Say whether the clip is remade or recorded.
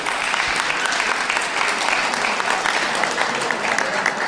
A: recorded